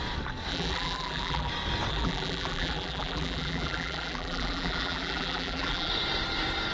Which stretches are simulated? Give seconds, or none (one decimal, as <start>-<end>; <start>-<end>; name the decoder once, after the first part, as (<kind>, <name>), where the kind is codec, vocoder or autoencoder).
0.5-1.5 (vocoder, BigVGAN v2); 1.9-5.9